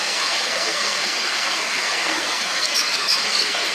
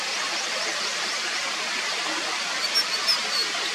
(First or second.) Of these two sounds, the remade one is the first